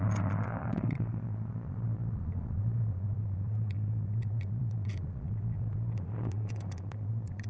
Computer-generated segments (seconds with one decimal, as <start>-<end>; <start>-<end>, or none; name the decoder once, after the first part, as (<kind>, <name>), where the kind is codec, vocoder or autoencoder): 0.0-7.5 (vocoder, Vocos)